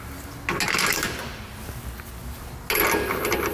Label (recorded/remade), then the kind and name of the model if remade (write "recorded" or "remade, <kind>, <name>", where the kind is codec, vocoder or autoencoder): recorded